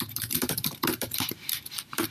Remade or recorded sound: remade